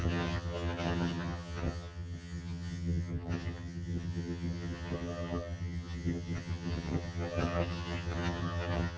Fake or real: fake